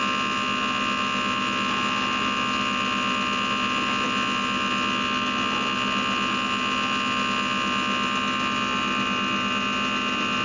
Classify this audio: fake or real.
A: real